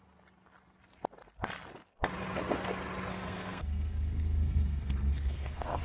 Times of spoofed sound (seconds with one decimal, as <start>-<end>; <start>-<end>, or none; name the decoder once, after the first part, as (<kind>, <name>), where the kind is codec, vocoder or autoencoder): 3.1-5.8 (codec, SNAC)